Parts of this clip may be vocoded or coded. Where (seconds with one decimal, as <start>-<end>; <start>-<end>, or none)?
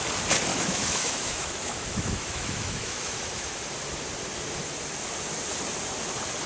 0.5-3.5